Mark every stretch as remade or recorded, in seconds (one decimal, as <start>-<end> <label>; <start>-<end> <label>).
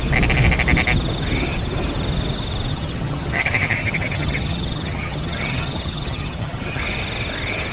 0.0-2.7 recorded; 2.7-6.8 remade; 6.8-7.7 recorded